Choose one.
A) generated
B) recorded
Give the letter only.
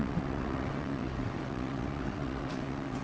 A